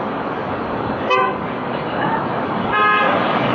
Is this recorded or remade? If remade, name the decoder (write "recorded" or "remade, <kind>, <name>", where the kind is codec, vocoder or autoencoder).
remade, codec, DAC